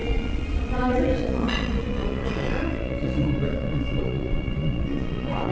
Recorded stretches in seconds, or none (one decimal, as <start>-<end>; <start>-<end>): none